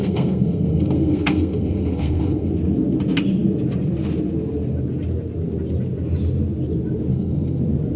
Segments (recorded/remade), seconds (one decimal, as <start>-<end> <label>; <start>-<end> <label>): 0.0-2.5 remade; 2.5-7.1 recorded; 7.1-7.6 remade; 7.6-8.0 recorded